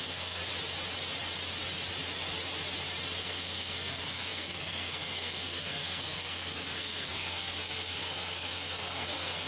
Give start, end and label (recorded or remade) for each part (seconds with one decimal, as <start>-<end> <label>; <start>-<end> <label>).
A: 0.0-0.4 remade; 0.4-3.2 recorded; 3.2-9.5 remade